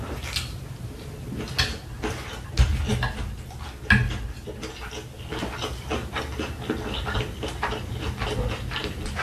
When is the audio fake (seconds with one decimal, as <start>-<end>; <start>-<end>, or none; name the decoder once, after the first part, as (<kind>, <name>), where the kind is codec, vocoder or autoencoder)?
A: none